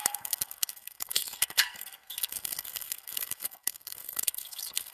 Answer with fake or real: fake